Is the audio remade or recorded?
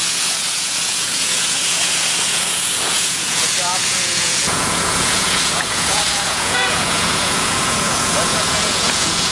remade